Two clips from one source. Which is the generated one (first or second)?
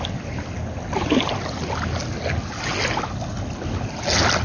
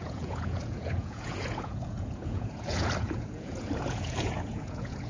second